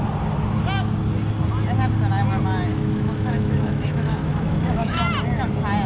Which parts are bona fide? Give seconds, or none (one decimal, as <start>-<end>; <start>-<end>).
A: 0.0-2.7; 5.0-5.9

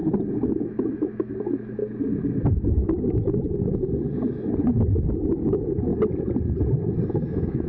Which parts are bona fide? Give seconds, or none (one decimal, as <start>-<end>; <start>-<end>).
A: 0.0-0.5; 1.8-2.5; 3.2-5.1; 5.9-7.0

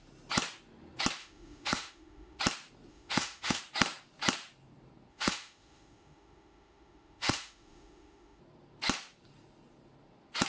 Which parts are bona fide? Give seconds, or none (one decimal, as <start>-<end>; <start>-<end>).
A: 0.0-1.2; 2.4-2.9; 3.6-5.1; 8.4-10.5

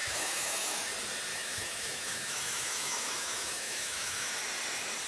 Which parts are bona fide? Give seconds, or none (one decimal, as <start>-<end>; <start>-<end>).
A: 0.9-1.3; 4.4-5.1

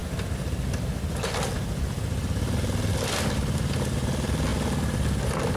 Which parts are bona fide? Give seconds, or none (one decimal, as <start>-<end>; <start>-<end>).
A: 0.0-5.6